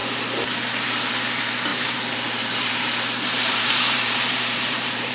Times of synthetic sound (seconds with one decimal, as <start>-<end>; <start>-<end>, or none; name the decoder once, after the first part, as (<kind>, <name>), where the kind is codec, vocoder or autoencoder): 1.7-5.1 (vocoder, BigVGAN v2)